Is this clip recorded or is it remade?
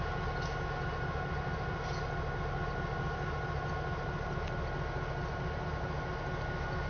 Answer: recorded